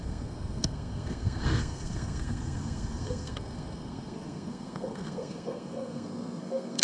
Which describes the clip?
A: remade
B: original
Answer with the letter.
A